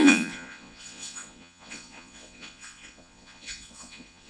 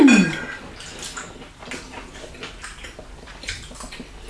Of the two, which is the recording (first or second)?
second